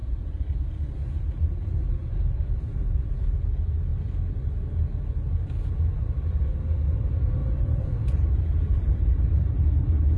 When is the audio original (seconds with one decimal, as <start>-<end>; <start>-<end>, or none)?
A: 3.4-7.4; 9.6-10.2